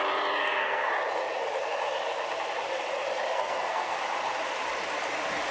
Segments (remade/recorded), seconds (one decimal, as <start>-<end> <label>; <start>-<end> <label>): 0.0-0.4 recorded; 0.4-0.9 remade; 0.9-3.3 recorded; 3.3-4.0 remade; 4.0-5.5 recorded